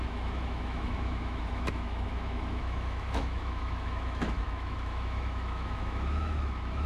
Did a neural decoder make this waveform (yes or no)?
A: yes